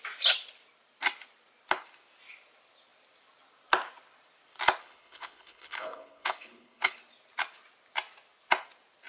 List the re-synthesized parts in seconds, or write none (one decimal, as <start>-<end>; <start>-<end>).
4.8-7.0